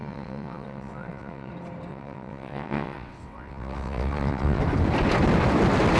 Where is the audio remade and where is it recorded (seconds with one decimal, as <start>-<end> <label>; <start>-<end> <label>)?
0.0-1.5 remade; 1.5-1.9 recorded; 1.9-4.6 remade; 4.6-6.0 recorded